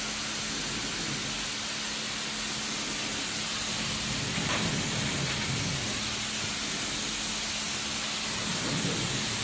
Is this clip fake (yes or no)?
no